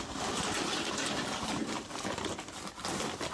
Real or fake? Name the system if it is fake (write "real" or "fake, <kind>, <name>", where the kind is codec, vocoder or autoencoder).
real